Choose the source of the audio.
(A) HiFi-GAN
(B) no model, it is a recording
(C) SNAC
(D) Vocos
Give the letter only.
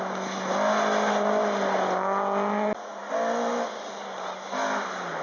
B